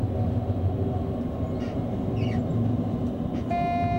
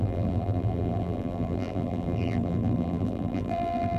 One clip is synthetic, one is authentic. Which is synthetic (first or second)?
second